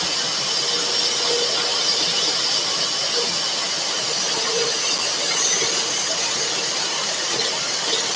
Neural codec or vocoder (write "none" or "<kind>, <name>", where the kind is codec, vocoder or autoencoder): none